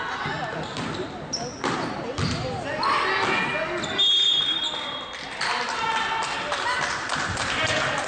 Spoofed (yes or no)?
no